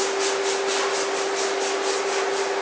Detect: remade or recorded recorded